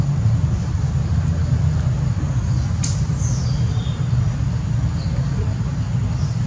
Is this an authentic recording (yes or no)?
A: yes